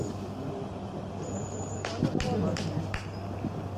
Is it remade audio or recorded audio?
recorded